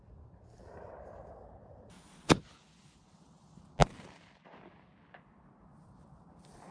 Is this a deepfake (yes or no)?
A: no